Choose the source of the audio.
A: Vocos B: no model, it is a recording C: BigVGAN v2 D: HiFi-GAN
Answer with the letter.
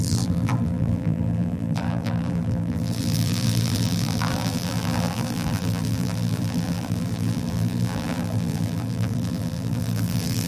C